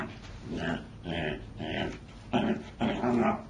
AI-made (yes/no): no